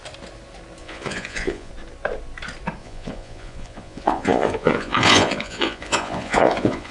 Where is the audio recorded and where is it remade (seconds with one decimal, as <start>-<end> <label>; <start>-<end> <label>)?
0.0-0.8 recorded; 0.8-1.7 remade; 1.7-2.8 recorded; 2.8-6.9 remade